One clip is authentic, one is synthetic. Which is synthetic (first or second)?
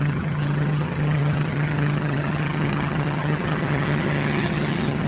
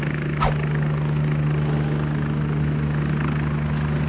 first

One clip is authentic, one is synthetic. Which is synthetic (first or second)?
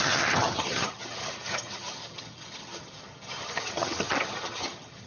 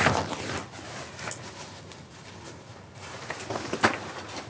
first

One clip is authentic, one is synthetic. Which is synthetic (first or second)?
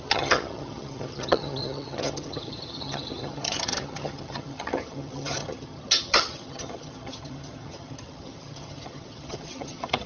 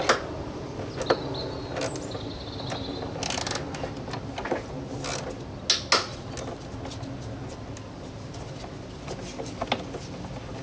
first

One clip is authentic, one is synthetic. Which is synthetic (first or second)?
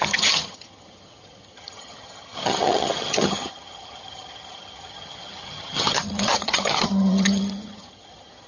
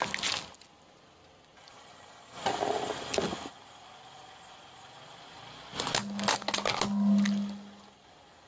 first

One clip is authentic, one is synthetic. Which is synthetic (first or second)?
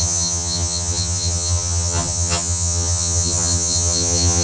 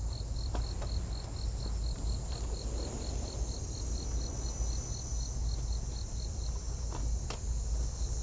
first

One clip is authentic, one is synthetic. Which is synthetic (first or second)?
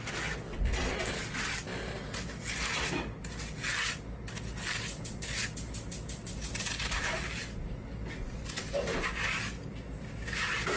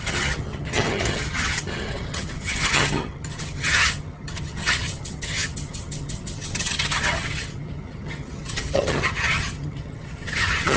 second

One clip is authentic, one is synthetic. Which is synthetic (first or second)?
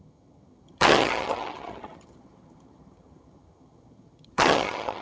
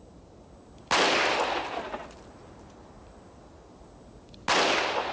first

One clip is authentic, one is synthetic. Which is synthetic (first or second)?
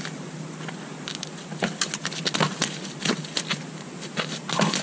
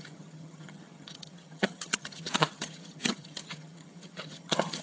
second